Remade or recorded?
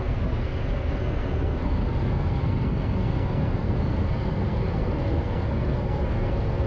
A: remade